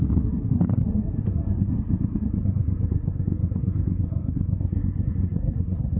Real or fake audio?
fake